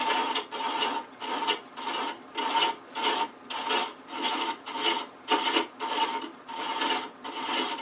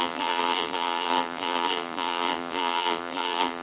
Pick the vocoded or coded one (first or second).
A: second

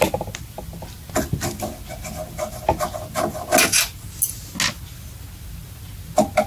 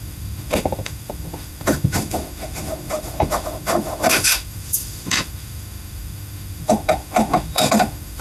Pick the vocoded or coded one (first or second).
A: second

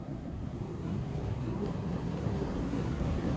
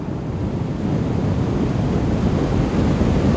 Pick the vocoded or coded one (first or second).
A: first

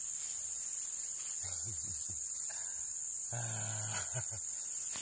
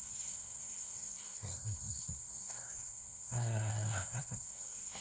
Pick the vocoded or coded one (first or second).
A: second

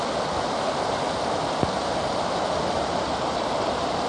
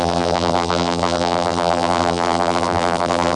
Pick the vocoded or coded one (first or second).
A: second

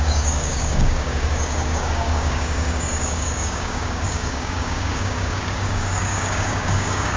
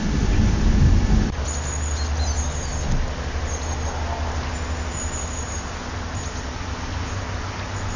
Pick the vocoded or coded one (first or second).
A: first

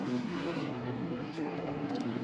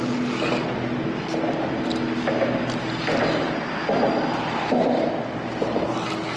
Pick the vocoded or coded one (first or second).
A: first